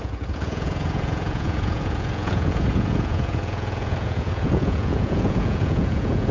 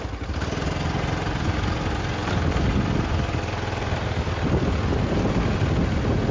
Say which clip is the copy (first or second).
first